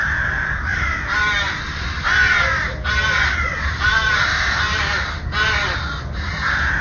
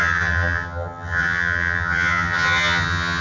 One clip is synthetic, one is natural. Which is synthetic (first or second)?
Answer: second